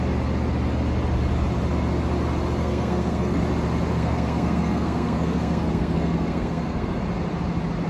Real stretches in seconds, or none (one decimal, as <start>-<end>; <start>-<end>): 0.0-2.6; 3.4-3.9; 7.0-7.9